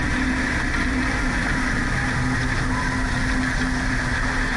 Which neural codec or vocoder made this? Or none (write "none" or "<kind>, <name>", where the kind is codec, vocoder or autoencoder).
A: none